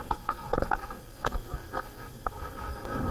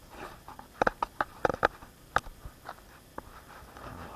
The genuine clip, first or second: second